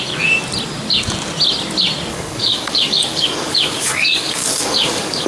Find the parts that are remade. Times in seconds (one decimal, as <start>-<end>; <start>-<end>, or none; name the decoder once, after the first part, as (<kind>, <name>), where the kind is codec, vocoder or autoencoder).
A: 2.1-5.3 (codec, DAC)